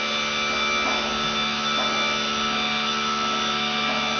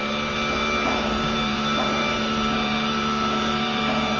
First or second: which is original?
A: first